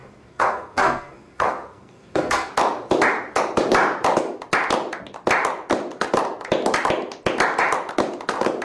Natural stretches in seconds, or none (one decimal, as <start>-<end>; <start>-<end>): 2.5-8.6